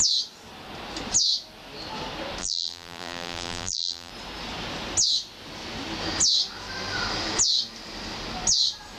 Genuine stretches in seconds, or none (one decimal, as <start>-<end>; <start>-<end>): 0.0-2.4; 4.1-9.0